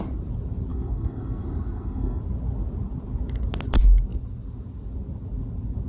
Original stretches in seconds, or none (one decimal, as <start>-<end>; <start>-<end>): 0.0-0.7; 2.2-5.9